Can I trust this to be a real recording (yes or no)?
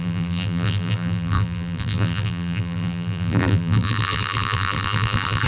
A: no